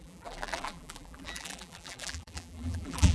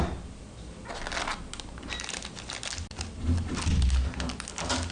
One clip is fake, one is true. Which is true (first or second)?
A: second